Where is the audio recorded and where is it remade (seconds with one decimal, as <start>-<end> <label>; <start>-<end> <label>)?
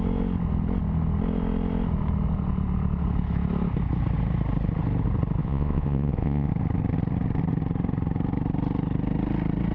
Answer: 0.0-5.4 recorded; 5.4-6.5 remade; 6.5-9.7 recorded